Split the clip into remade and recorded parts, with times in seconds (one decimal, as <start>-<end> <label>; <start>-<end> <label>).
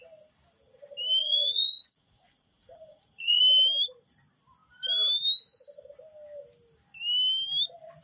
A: 0.0-1.2 recorded; 1.2-3.4 remade; 3.4-8.0 recorded